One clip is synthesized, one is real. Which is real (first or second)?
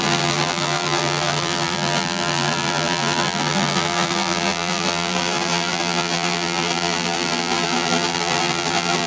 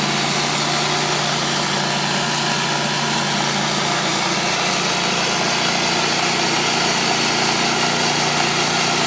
second